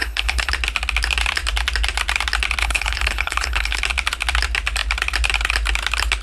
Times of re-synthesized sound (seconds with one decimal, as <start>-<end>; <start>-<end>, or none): 0.0-0.5; 2.6-3.8